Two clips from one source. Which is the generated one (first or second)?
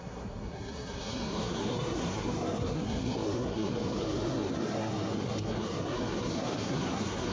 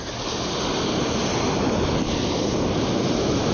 first